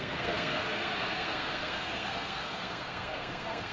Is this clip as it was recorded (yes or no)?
no